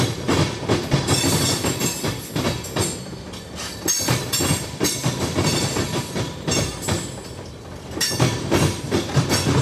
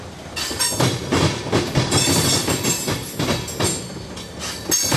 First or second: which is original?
second